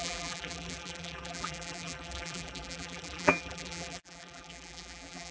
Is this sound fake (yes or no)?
yes